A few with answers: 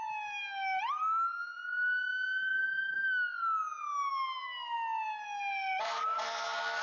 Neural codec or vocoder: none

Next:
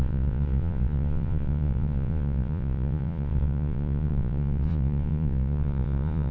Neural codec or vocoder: vocoder, Vocos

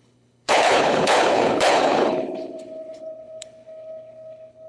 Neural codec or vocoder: codec, HILCodec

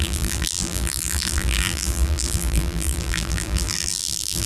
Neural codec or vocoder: vocoder, BigVGAN v2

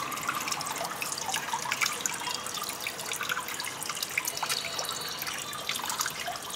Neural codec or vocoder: none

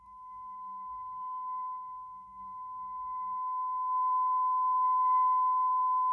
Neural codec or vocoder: codec, SNAC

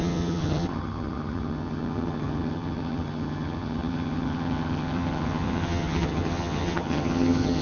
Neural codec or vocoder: vocoder, HiFi-GAN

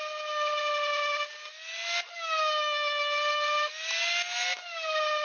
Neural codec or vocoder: none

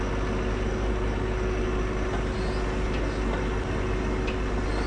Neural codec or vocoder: none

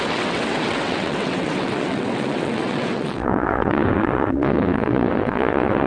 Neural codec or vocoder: vocoder, WaveNeXt